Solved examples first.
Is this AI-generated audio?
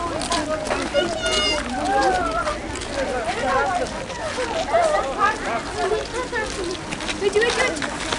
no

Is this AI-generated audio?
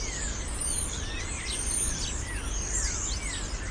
no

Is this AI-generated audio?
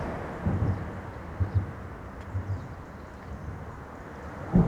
no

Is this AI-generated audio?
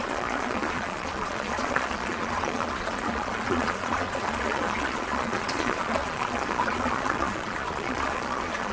yes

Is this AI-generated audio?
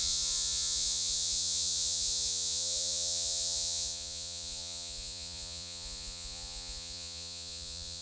yes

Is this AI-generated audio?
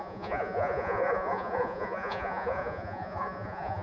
yes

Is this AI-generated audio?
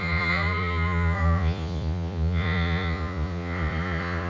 yes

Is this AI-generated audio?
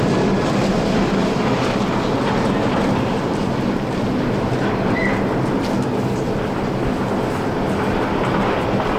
no